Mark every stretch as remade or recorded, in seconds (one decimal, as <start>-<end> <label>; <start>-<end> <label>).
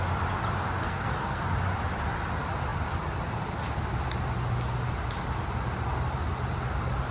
0.0-0.8 recorded; 0.8-1.4 remade; 1.4-7.1 recorded